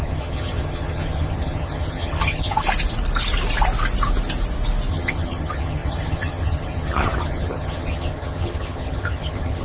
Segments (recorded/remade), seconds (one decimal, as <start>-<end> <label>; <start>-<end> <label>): 0.0-2.6 remade; 2.6-4.9 recorded; 4.9-9.6 remade